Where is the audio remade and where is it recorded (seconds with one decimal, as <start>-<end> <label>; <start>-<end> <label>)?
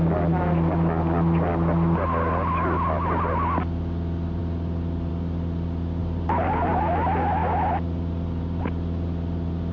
0.0-6.0 recorded; 6.0-6.8 remade; 6.8-9.7 recorded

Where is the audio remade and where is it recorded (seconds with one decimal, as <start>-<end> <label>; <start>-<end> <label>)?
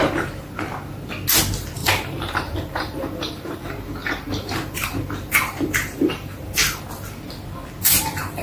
0.0-1.8 recorded; 1.8-6.8 remade; 6.8-8.4 recorded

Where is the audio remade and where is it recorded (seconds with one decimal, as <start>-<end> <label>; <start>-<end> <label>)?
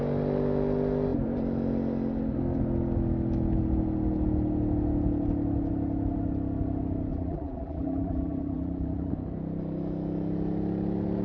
0.0-7.1 recorded; 7.1-9.1 remade; 9.1-11.2 recorded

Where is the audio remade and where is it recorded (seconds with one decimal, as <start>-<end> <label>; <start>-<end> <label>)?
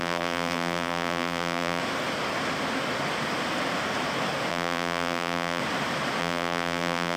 0.0-1.8 remade; 1.8-4.5 recorded; 4.5-5.6 remade; 5.6-6.2 recorded; 6.2-7.2 remade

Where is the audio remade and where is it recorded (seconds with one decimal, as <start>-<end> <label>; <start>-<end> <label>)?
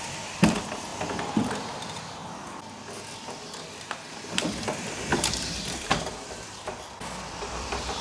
0.0-0.9 remade; 0.9-1.5 recorded; 1.5-2.2 remade; 2.2-3.8 recorded; 3.8-8.0 remade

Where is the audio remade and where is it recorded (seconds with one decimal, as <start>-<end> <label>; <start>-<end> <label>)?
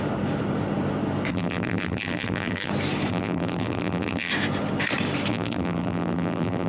0.0-1.3 recorded; 1.3-2.7 remade; 2.7-3.1 recorded; 3.1-4.3 remade; 4.3-5.3 recorded; 5.3-6.7 remade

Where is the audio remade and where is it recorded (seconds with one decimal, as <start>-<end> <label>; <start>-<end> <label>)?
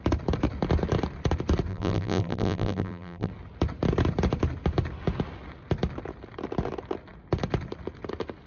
0.0-1.7 recorded; 1.7-3.3 remade; 3.3-8.5 recorded